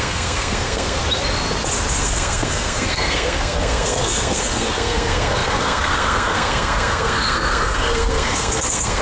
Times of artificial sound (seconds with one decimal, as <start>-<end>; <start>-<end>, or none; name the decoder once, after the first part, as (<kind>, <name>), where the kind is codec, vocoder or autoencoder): 0.0-1.0 (codec, SNAC); 2.0-9.0